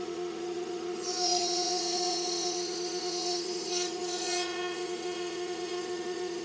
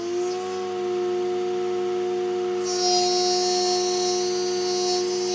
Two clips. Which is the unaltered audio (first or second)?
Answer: second